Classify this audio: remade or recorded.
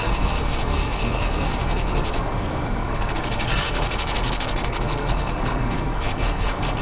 remade